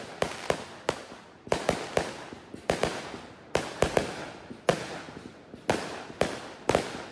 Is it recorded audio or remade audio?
recorded